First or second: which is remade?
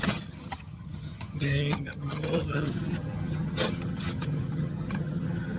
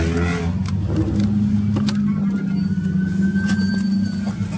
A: first